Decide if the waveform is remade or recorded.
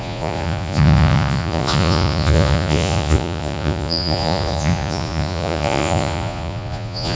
remade